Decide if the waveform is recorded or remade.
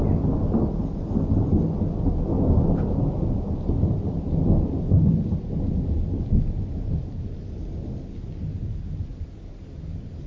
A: recorded